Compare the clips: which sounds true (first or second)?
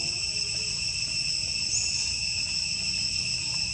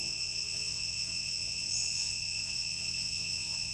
first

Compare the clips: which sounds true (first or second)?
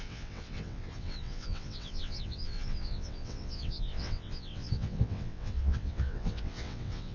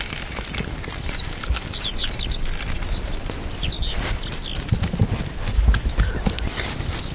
second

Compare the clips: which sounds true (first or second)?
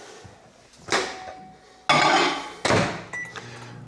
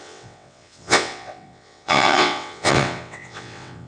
first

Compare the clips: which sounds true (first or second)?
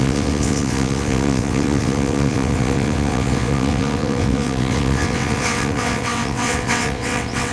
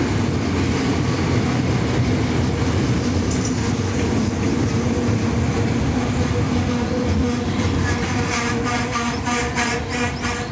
second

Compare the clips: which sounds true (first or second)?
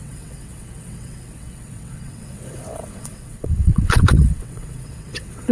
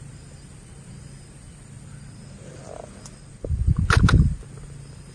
second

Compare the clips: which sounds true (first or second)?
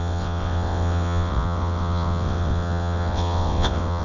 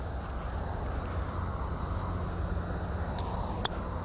second